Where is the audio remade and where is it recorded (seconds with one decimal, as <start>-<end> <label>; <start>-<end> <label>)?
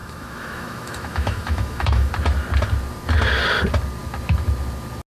0.0-2.1 remade; 2.1-5.1 recorded